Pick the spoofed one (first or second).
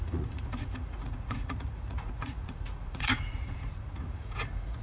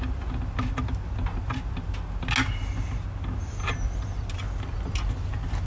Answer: first